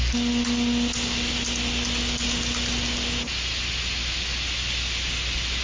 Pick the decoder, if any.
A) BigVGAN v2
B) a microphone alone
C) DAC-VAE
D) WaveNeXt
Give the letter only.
B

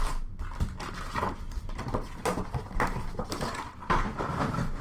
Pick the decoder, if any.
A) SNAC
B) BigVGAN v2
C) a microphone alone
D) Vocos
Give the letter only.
C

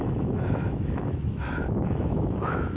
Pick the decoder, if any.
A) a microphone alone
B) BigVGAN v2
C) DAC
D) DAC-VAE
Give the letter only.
D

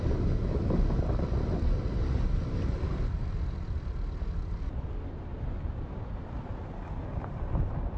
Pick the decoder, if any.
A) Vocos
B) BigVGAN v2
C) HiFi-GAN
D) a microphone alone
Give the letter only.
B